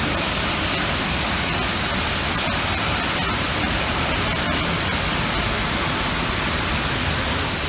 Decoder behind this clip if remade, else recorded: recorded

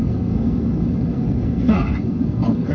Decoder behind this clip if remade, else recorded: remade, codec, SNAC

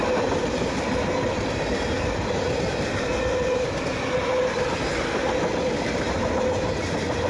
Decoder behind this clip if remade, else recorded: recorded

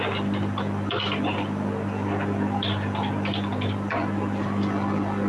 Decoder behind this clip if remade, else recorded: recorded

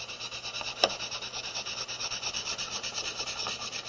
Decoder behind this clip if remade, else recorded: recorded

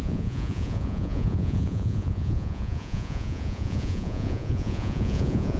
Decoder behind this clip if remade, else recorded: remade, vocoder, Vocos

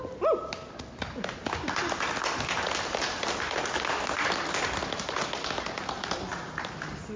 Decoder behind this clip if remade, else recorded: recorded